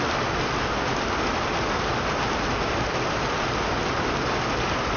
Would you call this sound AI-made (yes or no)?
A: no